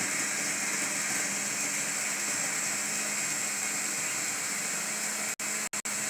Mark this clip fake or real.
real